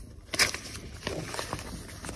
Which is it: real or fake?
real